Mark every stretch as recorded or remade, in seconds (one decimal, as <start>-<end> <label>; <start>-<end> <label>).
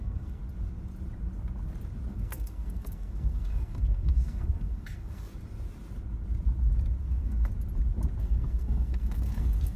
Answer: 0.0-0.4 remade; 0.4-2.1 recorded; 2.1-5.3 remade; 5.3-7.0 recorded; 7.0-7.5 remade; 7.5-8.2 recorded; 8.2-9.8 remade